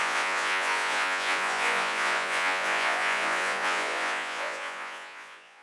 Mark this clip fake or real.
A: fake